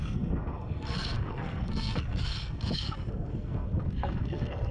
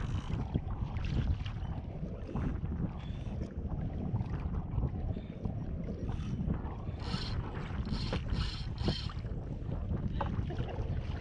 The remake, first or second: first